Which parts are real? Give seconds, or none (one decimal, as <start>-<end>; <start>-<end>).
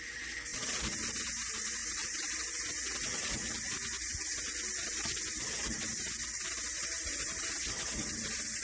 0.0-1.8; 2.3-8.6